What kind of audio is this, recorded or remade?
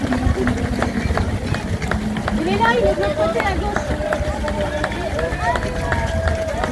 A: recorded